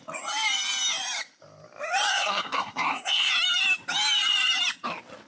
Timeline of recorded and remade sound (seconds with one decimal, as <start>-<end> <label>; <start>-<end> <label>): 0.0-2.1 recorded; 2.1-3.3 remade; 3.3-5.3 recorded